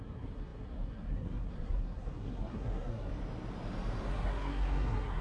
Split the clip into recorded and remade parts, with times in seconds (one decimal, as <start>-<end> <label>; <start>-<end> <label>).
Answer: 0.0-3.1 remade; 3.1-4.1 recorded; 4.1-5.2 remade